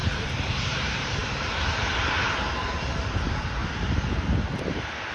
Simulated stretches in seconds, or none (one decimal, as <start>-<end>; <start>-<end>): 0.0-3.6; 4.6-5.1

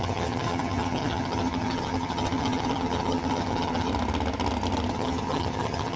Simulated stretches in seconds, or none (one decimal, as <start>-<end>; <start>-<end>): 0.0-3.9; 4.9-6.0

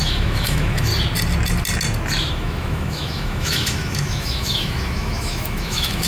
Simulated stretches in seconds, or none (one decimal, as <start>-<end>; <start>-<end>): 0.0-0.9; 2.3-6.1

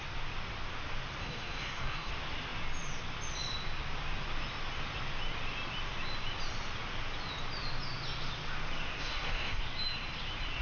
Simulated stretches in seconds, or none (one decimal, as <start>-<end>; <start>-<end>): 1.2-2.1; 9.0-9.6

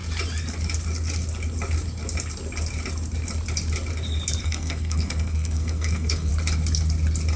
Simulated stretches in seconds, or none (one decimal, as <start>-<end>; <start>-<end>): 4.4-6.3

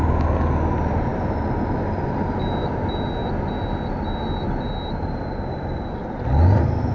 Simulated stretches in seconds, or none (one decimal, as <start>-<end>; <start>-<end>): none

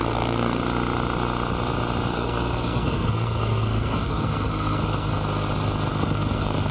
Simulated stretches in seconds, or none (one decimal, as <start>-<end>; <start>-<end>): 0.0-0.6; 2.1-5.1; 5.9-6.7

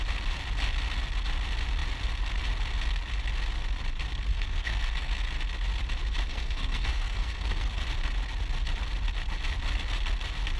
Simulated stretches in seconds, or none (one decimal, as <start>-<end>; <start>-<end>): 4.3-5.1; 6.3-7.8